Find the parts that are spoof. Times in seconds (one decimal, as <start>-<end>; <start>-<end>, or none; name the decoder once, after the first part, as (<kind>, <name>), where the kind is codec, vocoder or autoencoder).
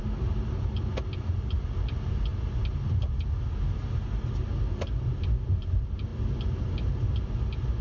none